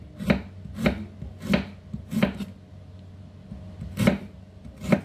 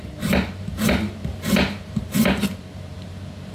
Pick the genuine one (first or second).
first